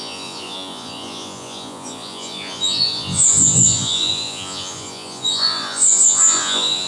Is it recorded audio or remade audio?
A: remade